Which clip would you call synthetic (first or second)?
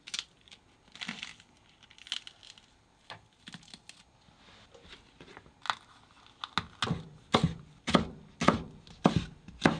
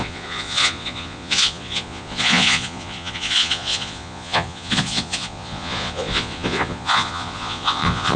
second